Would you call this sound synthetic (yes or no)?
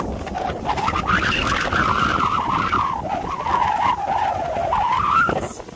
yes